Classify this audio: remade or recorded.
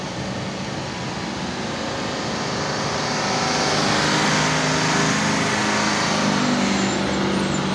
recorded